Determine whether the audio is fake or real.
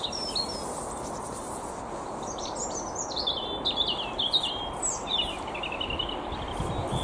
real